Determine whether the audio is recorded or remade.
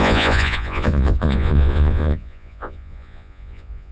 remade